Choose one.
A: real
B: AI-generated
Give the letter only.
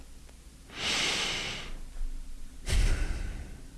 A